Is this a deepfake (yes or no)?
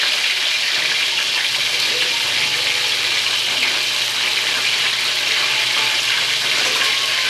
no